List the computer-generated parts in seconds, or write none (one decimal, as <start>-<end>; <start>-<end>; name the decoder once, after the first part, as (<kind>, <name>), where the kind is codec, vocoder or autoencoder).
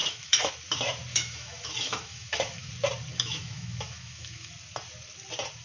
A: 0.0-0.5 (autoencoder, DAC-VAE); 1.1-2.7; 3.1-4.5